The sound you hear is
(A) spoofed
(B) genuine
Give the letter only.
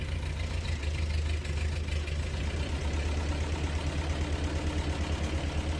B